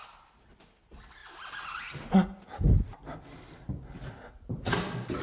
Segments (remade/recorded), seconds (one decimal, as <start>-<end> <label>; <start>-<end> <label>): 0.0-5.2 recorded